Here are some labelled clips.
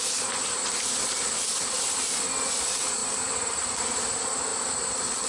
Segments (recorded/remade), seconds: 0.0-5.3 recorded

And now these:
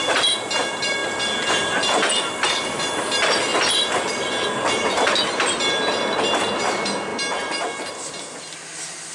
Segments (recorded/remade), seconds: 0.0-9.1 recorded

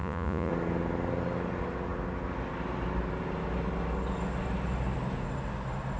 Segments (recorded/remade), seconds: 0.0-0.5 remade; 0.5-6.0 recorded

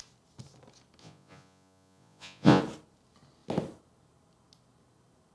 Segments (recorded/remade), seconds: 0.0-1.0 recorded; 1.0-2.6 remade; 2.6-5.3 recorded

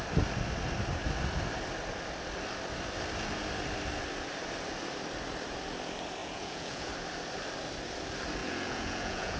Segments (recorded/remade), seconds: 0.0-6.2 recorded; 6.2-6.9 remade; 6.9-8.4 recorded; 8.4-9.4 remade

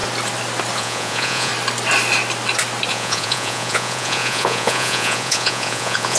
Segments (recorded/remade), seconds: 0.0-0.8 recorded; 0.8-1.5 remade; 1.5-2.9 recorded; 2.9-6.2 remade